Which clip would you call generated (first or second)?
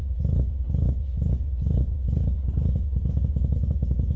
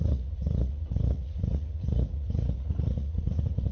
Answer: second